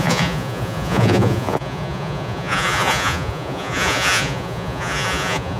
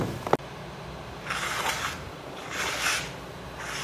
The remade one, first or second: first